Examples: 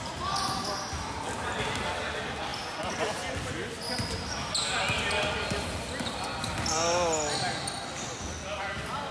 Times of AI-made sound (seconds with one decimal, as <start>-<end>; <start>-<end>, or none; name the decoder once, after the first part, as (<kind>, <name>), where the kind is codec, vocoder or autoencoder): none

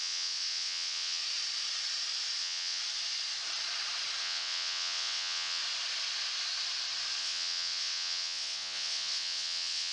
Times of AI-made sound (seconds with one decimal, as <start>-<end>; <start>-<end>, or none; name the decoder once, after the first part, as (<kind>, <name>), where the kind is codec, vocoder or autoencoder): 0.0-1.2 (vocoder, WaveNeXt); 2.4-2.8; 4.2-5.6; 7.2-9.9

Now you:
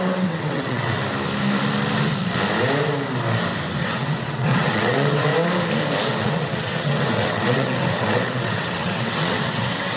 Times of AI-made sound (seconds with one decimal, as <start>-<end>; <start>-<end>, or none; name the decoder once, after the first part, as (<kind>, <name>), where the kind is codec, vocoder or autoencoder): 0.0-1.0 (vocoder, WaveNeXt); 3.8-5.3; 6.2-10.0

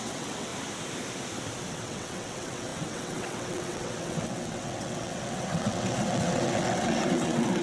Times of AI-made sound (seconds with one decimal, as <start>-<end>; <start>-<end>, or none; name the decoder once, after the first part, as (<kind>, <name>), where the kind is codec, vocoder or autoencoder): 0.0-0.5 (vocoder, WaveNeXt); 1.7-7.6